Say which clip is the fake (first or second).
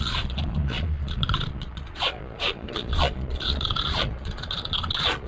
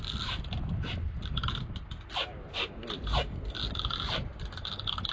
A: first